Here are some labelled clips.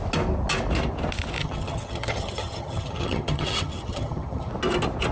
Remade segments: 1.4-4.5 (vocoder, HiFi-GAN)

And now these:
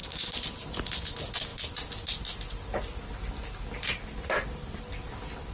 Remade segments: none

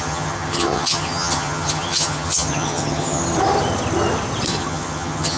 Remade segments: 0.0-3.2 (vocoder, HiFi-GAN); 4.5-5.4